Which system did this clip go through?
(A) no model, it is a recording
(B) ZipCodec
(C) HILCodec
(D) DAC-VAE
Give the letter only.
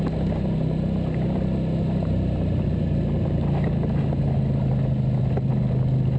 A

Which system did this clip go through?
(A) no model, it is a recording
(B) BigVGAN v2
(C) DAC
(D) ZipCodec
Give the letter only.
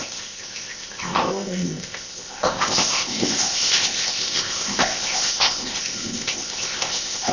D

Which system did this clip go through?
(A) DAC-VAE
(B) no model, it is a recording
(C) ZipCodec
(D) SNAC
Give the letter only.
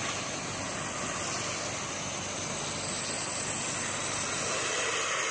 B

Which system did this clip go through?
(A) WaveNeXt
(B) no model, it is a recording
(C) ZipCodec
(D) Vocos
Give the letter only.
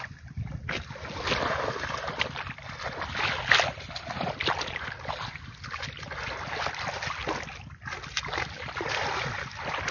B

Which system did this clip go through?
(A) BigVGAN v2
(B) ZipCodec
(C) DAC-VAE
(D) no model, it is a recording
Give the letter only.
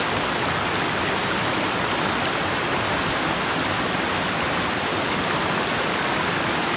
D